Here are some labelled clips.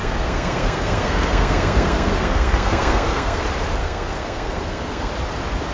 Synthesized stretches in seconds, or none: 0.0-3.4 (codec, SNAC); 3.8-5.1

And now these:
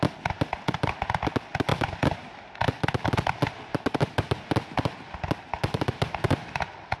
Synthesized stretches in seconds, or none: none

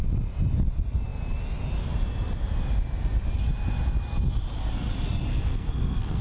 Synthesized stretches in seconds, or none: 5.3-6.2 (codec, SNAC)

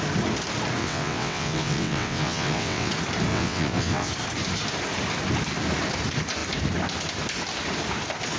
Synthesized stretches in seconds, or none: 0.8-2.9 (vocoder, WaveNeXt); 3.3-4.1

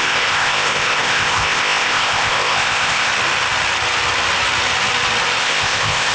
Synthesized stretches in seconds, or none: 0.0-3.1 (codec, ZipCodec); 5.4-6.1

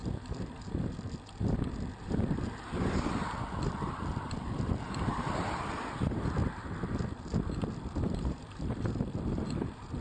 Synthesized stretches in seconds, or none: 0.0-6.4 (vocoder, BigVGAN v2); 7.8-10.0